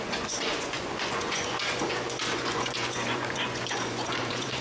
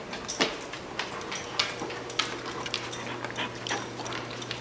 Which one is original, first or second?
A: second